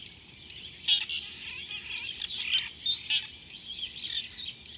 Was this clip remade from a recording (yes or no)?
no